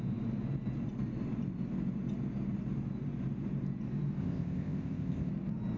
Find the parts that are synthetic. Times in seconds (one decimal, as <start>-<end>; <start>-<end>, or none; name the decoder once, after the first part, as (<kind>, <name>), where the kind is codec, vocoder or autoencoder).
4.2-5.3 (codec, ZipCodec)